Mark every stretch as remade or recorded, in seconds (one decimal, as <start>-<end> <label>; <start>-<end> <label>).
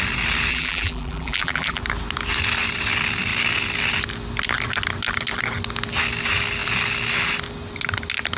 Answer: 0.0-0.5 recorded; 0.5-1.8 remade; 1.8-8.4 recorded